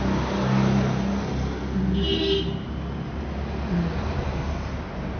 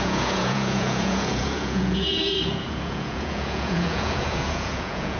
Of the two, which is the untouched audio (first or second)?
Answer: first